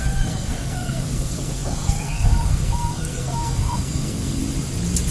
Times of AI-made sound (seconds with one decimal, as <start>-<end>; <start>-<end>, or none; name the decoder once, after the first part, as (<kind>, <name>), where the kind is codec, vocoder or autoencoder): 0.0-4.4 (codec, SNAC)